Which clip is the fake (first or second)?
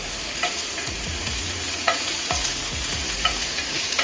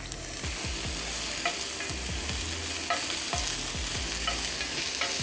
first